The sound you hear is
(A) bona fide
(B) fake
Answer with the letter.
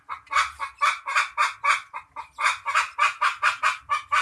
A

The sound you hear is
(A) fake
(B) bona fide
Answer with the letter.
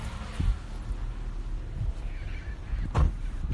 B